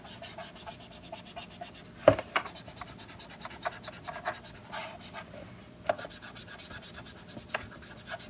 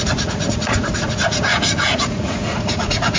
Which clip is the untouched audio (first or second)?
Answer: first